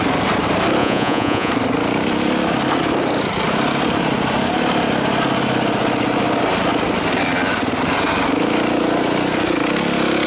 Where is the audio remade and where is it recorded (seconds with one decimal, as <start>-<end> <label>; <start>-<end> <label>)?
0.0-0.8 recorded; 0.8-1.5 remade; 1.5-10.3 recorded